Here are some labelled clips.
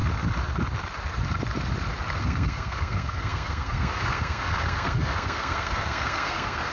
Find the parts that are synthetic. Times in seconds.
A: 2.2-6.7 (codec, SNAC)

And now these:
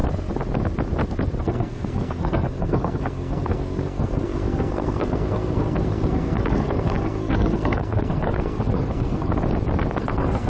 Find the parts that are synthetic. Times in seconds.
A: 1.4-9.3 (codec, SNAC); 10.0-10.5